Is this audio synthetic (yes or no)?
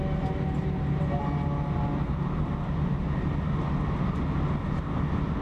no